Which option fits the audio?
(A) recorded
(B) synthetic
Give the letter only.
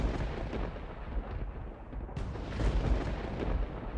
A